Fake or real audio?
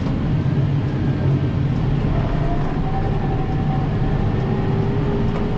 real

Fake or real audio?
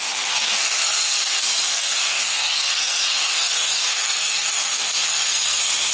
fake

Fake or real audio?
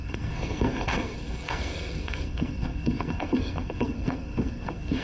fake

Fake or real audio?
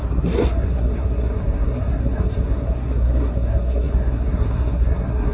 fake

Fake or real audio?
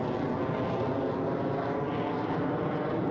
real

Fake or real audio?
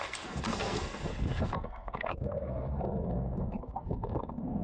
fake